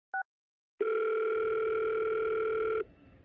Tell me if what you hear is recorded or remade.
recorded